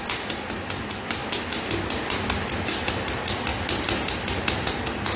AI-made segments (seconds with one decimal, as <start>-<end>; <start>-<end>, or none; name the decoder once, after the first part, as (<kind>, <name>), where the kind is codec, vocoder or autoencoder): 3.5-5.2 (vocoder, BigVGAN v2)